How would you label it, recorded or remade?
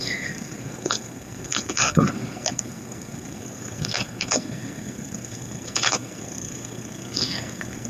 remade